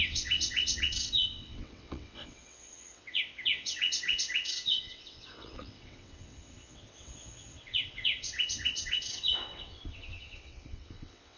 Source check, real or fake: fake